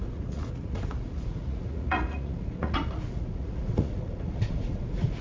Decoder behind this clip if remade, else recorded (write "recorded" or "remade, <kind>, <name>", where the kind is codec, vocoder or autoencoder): remade, vocoder, Vocos